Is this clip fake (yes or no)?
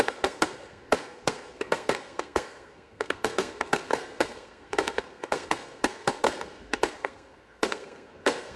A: yes